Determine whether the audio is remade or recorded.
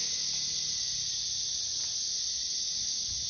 recorded